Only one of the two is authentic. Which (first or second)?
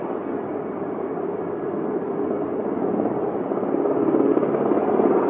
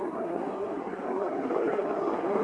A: first